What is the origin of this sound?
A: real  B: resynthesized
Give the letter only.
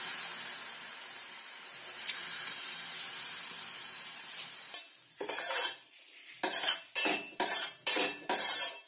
B